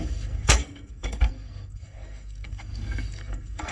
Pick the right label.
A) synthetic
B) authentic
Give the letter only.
A